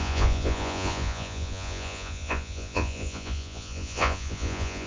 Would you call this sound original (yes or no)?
no